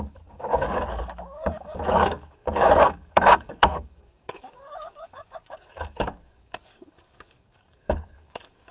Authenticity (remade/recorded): remade